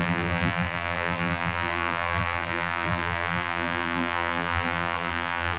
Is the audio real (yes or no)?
no